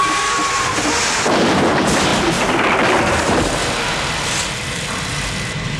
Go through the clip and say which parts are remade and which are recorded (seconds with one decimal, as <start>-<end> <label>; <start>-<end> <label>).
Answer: 0.0-5.8 recorded